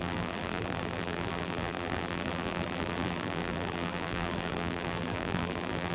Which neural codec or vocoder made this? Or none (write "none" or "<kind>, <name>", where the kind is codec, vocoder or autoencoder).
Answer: vocoder, BigVGAN v2